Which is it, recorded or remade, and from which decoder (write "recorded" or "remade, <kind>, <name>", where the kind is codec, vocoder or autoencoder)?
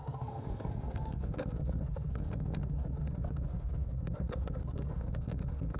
remade, codec, SNAC